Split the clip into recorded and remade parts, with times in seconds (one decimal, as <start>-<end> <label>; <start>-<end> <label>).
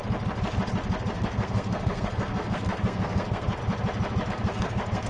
0.0-1.1 recorded; 1.1-3.6 remade; 3.6-4.3 recorded; 4.3-5.1 remade